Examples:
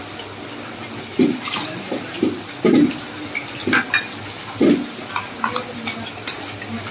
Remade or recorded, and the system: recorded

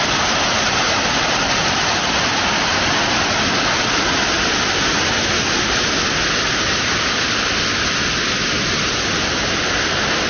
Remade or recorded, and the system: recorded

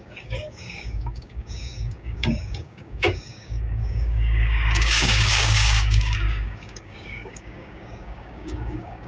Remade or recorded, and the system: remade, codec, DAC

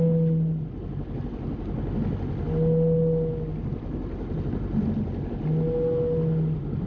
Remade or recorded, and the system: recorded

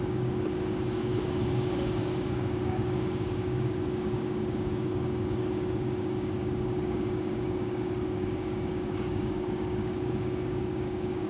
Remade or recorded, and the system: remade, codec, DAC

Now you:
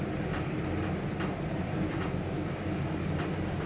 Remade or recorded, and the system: recorded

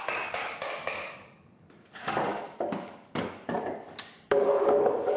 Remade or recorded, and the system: remade, codec, DAC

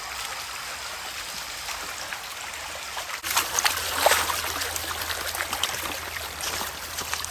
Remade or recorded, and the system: recorded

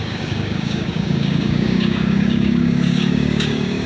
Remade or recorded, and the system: remade, codec, DAC